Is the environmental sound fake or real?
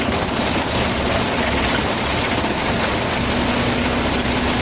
real